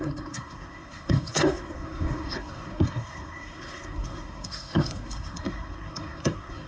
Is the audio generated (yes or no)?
yes